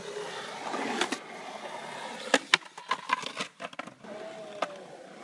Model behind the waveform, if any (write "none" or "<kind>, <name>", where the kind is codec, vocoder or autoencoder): none